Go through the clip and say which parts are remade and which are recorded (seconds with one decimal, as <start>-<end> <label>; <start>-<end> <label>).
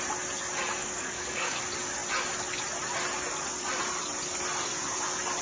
0.0-0.8 recorded; 0.8-1.6 remade; 1.6-5.4 recorded